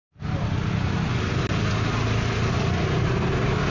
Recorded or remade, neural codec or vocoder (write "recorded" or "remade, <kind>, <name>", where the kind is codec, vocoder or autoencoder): recorded